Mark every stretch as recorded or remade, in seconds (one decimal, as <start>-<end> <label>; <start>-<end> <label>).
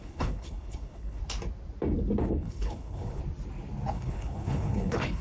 0.0-1.2 remade; 1.2-2.2 recorded; 2.2-3.2 remade; 3.2-3.9 recorded; 3.9-5.2 remade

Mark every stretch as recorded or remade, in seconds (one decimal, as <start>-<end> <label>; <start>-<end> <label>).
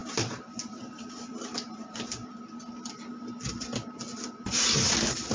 0.0-2.2 remade; 2.2-5.3 recorded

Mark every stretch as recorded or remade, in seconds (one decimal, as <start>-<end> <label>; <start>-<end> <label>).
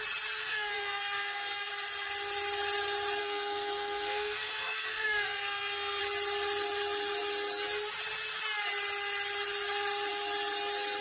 0.0-0.4 recorded; 0.4-1.7 remade; 1.7-3.2 recorded; 3.2-6.0 remade; 6.0-11.0 recorded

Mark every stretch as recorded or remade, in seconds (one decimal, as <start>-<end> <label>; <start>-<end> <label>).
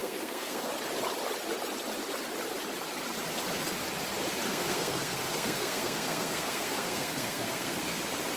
0.0-0.7 remade; 0.7-4.5 recorded; 4.5-7.9 remade; 7.9-8.4 recorded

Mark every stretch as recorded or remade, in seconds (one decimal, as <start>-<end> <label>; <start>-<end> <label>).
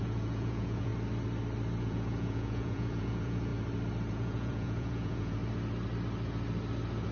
0.0-0.9 remade; 0.9-1.8 recorded; 1.8-3.5 remade; 3.5-4.1 recorded; 4.1-5.4 remade; 5.4-7.1 recorded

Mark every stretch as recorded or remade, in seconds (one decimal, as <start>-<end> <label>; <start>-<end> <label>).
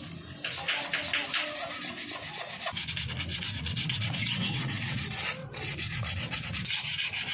0.0-3.3 recorded; 3.3-5.0 remade; 5.0-5.4 recorded; 5.4-6.5 remade; 6.5-7.3 recorded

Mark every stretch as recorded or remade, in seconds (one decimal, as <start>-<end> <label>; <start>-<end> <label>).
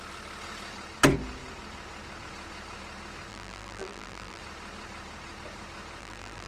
0.0-3.3 recorded; 3.3-4.4 remade; 4.4-6.0 recorded; 6.0-6.5 remade